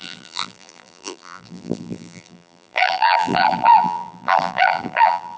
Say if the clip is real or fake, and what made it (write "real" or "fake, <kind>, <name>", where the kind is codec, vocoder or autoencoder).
fake, vocoder, BigVGAN v2